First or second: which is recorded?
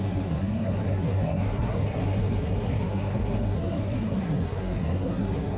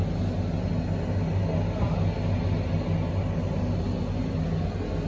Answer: second